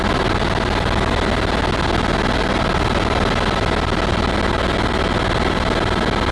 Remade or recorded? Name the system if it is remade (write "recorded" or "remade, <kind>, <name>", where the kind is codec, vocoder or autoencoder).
recorded